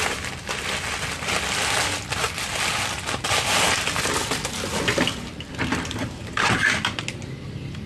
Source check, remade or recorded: recorded